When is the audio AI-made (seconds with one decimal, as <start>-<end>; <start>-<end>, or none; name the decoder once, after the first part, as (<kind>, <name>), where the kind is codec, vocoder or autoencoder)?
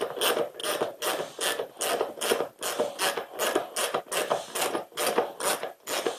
none